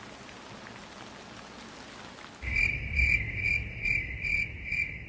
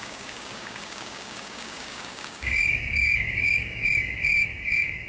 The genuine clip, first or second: first